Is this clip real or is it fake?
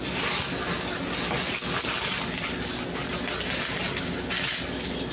real